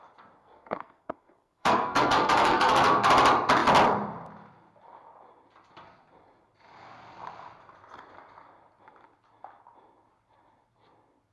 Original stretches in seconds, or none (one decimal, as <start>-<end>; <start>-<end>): 0.0-0.4; 3.1-11.3